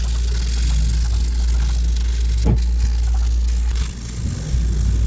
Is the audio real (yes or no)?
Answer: yes